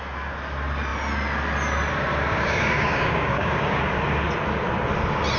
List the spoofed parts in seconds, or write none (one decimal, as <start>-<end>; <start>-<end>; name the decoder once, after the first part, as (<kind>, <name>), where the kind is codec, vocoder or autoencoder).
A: 2.3-3.8 (codec, DAC)